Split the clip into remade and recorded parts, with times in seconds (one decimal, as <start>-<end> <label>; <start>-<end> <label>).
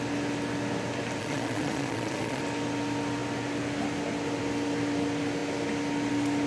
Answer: 0.0-1.2 recorded; 1.2-2.4 remade; 2.4-6.5 recorded